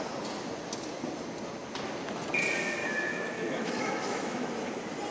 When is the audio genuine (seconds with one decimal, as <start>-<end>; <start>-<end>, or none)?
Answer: 0.0-2.8; 4.5-5.1